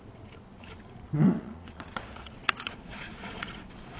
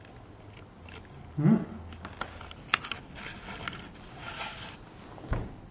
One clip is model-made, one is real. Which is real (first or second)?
second